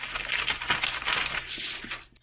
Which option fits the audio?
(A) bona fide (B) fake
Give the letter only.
A